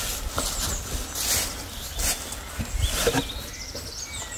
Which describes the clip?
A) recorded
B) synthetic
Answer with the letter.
A